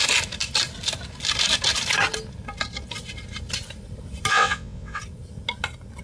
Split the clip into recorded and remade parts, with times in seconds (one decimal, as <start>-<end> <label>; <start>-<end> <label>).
0.0-4.3 recorded; 4.3-5.0 remade; 5.0-6.0 recorded